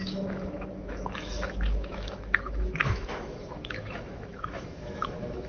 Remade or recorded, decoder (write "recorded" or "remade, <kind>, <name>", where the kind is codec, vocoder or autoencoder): remade, autoencoder, DAC-VAE